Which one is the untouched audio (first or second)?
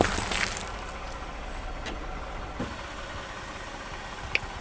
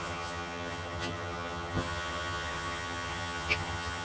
first